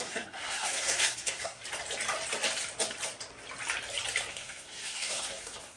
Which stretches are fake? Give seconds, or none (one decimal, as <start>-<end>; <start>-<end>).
0.0-1.6; 4.3-5.8